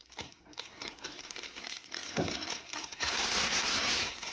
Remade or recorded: remade